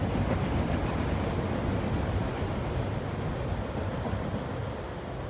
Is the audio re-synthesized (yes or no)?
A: no